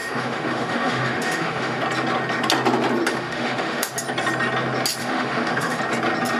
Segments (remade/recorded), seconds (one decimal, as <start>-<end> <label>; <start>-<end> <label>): 0.0-1.8 remade; 1.8-3.1 recorded; 3.1-3.9 remade; 3.9-5.0 recorded; 5.0-5.8 remade; 5.8-6.4 recorded